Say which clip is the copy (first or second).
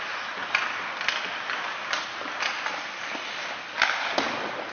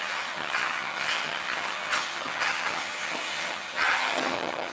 second